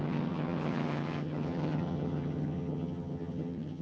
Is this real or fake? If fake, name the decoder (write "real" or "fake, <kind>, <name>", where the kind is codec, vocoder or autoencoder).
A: fake, vocoder, HiFi-GAN